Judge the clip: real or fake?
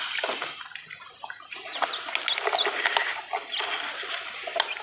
real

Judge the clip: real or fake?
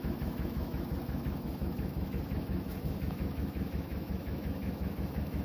fake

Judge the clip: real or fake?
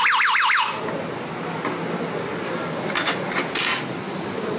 real